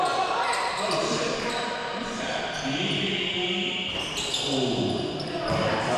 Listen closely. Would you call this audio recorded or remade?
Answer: recorded